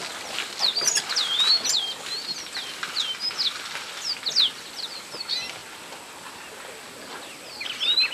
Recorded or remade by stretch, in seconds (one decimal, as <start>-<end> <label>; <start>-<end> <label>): 0.0-8.1 recorded